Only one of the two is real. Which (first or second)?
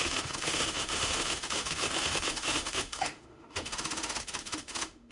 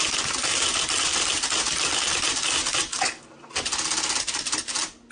second